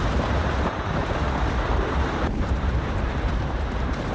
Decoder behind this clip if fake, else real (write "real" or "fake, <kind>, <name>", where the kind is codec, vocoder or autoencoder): fake, vocoder, BigVGAN v2